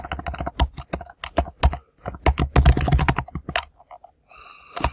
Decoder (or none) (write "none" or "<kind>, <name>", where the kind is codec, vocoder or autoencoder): none